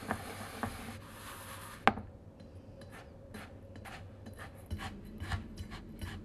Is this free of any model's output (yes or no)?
yes